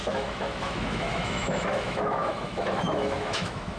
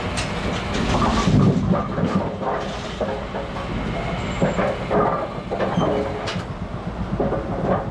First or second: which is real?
second